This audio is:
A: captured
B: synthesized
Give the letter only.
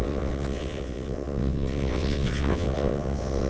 B